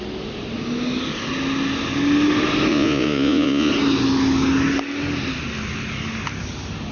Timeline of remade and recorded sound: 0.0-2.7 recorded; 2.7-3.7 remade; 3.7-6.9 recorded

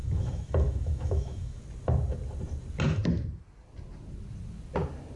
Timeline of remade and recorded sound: 0.0-1.6 remade; 1.6-5.2 recorded

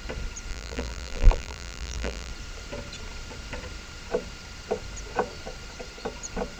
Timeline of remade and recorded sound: 0.0-0.5 recorded; 0.5-2.3 remade; 2.3-6.6 recorded

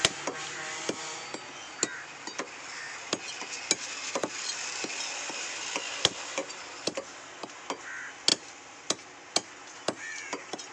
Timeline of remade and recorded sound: 0.0-10.7 recorded

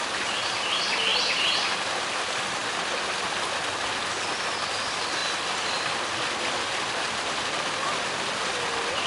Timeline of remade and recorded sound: 0.0-5.2 recorded; 5.2-7.4 remade; 7.4-9.1 recorded

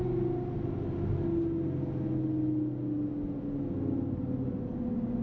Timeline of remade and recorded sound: 0.0-5.2 recorded

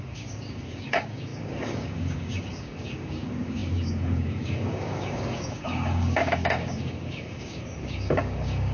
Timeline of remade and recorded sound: 0.0-8.7 remade

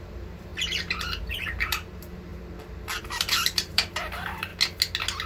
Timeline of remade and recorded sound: 0.0-2.3 remade; 2.3-3.0 recorded; 3.0-4.5 remade; 4.5-5.3 recorded